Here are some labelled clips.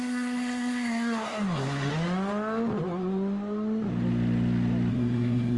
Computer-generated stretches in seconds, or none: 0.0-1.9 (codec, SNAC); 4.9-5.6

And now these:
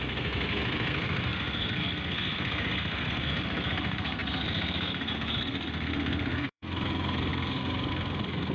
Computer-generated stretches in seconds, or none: 0.0-8.5 (codec, SNAC)